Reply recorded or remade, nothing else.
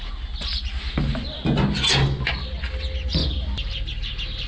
recorded